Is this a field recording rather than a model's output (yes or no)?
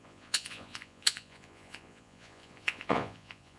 no